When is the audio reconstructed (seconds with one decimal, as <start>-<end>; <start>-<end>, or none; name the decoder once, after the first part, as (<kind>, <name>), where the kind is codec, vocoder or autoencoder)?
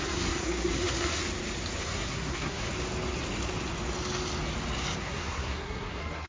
0.0-1.2 (codec, SNAC); 1.8-2.7; 5.0-6.3